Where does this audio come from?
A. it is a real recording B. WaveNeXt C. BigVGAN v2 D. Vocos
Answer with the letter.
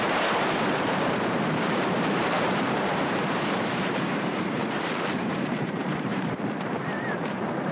C